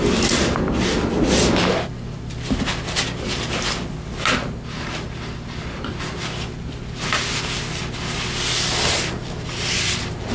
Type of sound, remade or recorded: recorded